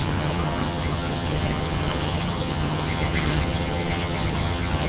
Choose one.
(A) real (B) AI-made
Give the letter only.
B